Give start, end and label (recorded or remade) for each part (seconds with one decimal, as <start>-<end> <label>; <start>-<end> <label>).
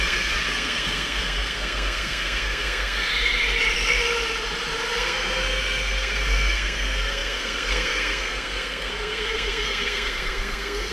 0.0-3.1 remade; 3.1-4.9 recorded; 4.9-10.9 remade